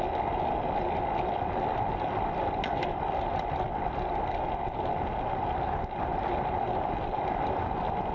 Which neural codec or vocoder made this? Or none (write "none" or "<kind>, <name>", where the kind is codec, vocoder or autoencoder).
none